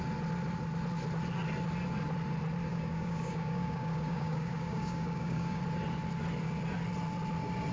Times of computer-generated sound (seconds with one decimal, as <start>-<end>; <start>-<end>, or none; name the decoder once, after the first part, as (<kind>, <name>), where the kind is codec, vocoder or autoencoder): 2.7-5.6 (codec, DAC)